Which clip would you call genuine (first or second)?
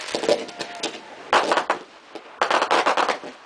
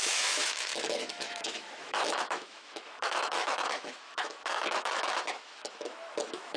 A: first